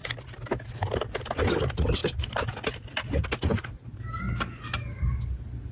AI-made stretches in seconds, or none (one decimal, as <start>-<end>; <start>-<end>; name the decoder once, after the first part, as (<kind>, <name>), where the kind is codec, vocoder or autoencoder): none